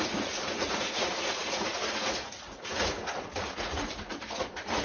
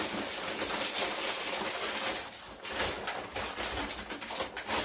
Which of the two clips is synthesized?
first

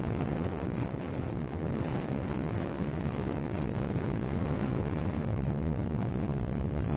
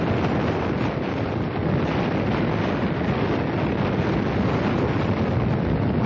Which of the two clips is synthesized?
first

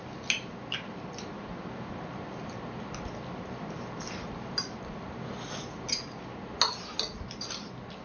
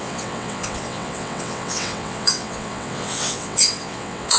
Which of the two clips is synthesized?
second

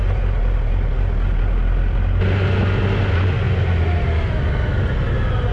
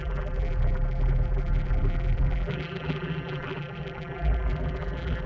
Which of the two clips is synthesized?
second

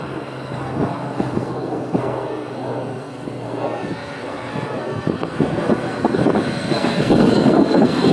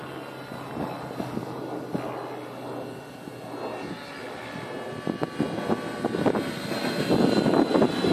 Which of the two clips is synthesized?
first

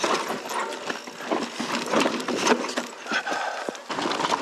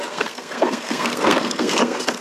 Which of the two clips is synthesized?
second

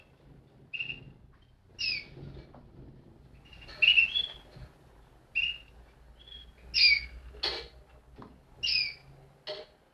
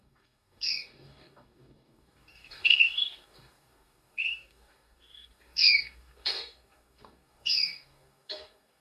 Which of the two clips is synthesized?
second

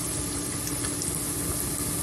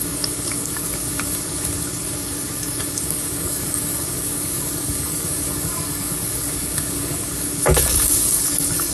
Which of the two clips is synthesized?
second